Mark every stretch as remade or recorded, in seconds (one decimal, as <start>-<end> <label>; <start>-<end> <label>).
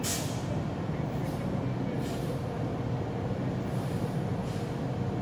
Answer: 0.0-0.4 remade; 0.4-3.5 recorded; 3.5-4.4 remade; 4.4-5.2 recorded